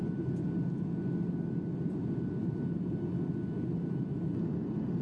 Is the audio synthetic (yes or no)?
no